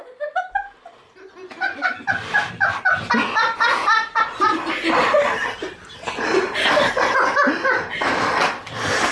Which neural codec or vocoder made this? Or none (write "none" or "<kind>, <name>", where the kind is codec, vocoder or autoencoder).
none